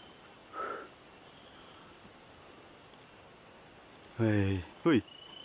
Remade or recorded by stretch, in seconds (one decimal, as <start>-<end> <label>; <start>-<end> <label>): 0.0-5.4 recorded